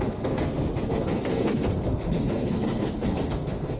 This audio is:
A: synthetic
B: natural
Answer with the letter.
A